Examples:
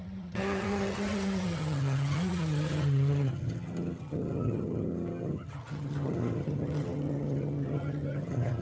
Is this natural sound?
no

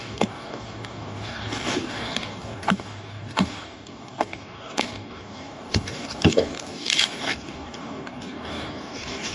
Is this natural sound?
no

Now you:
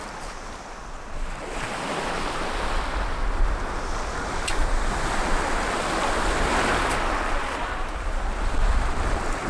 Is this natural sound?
yes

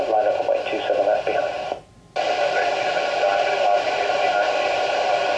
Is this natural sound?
yes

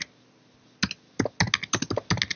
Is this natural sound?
yes